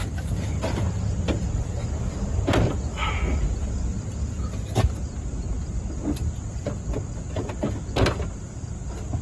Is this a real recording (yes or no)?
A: yes